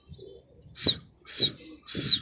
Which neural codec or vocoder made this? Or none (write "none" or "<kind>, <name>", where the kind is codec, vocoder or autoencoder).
none